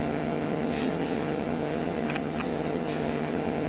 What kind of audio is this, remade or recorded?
remade